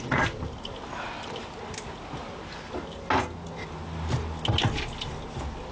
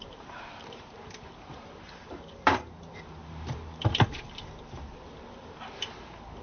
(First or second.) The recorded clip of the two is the first